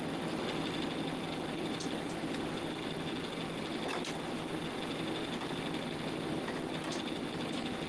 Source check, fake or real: real